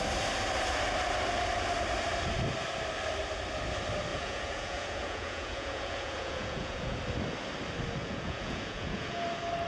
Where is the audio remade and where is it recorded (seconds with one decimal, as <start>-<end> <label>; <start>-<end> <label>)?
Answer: 0.0-4.1 recorded; 4.1-7.0 remade; 7.0-8.0 recorded; 8.0-9.2 remade; 9.2-9.7 recorded